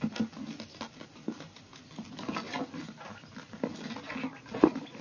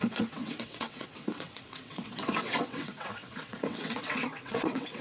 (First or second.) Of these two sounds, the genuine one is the first